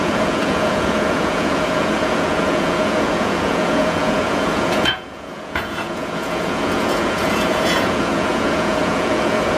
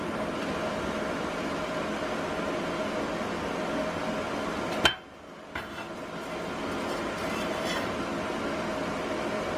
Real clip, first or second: second